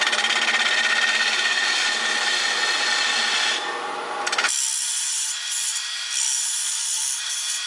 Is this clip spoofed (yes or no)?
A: no